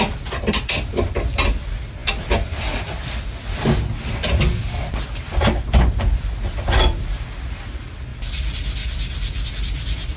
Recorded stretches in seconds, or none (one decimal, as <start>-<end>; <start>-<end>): 0.0-10.2